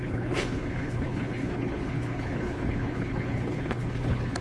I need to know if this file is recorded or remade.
remade